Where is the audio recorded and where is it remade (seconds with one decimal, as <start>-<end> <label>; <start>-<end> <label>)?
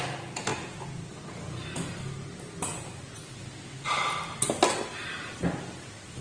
0.0-6.2 recorded